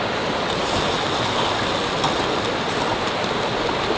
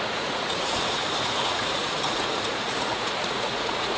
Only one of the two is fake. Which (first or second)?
second